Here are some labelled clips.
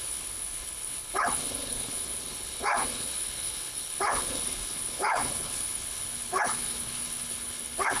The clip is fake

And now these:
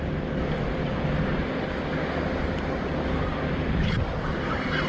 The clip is real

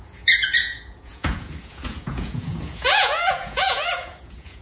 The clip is fake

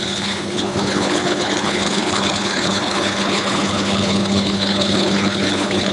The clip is fake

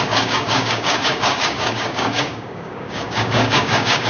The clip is fake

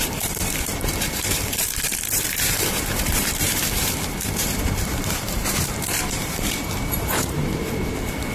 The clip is fake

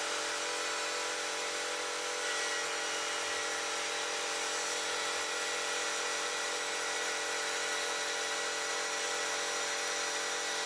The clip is real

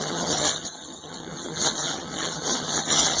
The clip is fake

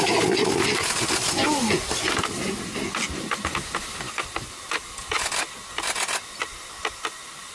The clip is real